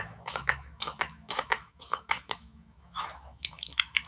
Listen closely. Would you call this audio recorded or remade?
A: remade